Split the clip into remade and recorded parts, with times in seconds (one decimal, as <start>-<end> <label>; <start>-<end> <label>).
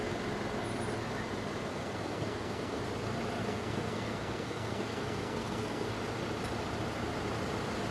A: 0.0-1.7 recorded; 1.7-2.8 remade; 2.8-3.4 recorded; 3.4-5.9 remade; 5.9-7.9 recorded